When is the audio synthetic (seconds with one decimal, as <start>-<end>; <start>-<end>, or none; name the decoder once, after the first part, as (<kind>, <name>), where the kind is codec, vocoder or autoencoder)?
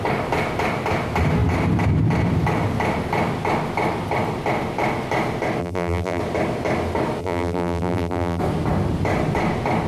5.6-6.2 (vocoder, BigVGAN v2); 7.2-8.4